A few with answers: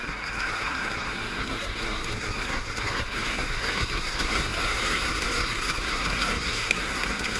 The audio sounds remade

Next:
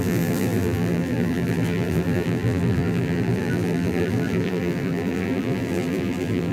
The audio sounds remade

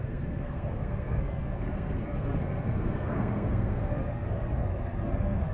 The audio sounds remade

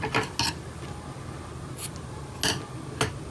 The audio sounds recorded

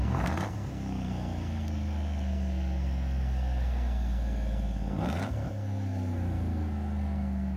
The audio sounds remade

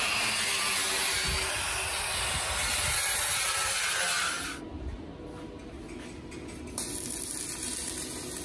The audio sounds recorded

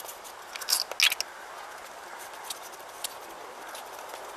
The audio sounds recorded